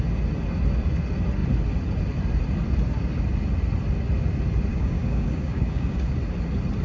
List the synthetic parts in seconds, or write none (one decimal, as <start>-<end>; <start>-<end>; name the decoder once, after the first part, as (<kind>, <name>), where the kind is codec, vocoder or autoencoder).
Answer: 4.7-6.1 (codec, DAC)